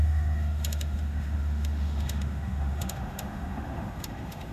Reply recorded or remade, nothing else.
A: remade